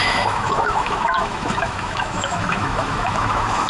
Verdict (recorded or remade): remade